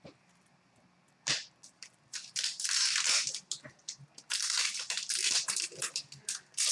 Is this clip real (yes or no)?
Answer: yes